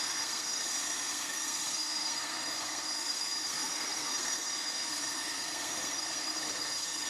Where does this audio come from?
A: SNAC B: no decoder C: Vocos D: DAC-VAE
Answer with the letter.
A